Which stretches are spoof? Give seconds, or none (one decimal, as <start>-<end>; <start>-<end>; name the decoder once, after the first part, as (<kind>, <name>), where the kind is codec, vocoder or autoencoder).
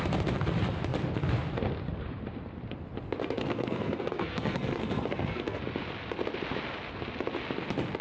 3.2-5.6 (codec, SNAC)